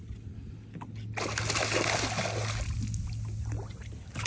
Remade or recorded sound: recorded